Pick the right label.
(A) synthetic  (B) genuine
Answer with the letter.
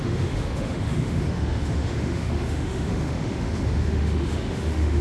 A